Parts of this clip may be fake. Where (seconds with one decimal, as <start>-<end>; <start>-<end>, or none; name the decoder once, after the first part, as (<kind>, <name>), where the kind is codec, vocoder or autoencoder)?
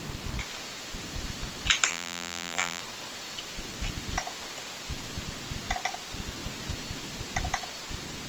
1.9-2.8 (vocoder, BigVGAN v2)